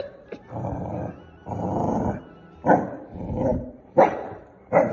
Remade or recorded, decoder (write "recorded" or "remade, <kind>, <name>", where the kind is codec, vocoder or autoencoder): remade, vocoder, BigVGAN v2